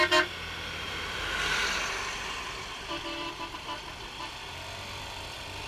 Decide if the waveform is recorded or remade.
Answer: remade